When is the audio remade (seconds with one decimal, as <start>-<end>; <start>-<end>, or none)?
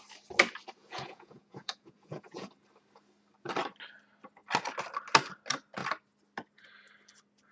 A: 0.8-2.5